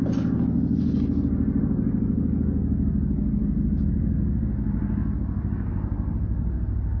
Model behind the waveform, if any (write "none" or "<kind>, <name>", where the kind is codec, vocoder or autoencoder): none